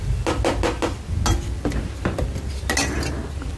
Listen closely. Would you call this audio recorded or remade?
recorded